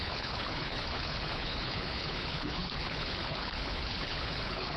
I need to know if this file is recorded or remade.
remade